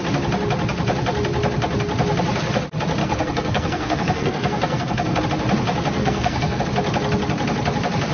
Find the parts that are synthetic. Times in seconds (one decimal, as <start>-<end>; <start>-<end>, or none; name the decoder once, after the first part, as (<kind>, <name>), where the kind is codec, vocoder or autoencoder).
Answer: 3.0-5.2 (codec, SNAC); 6.0-6.6